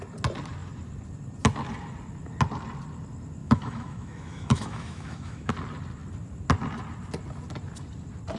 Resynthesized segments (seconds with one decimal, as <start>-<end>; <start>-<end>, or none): 3.4-5.5